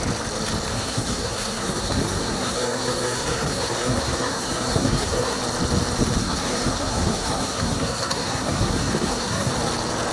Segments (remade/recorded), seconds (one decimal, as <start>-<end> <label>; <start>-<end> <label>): 0.0-0.7 recorded; 0.7-5.4 remade; 5.4-6.2 recorded; 6.2-9.5 remade; 9.5-10.1 recorded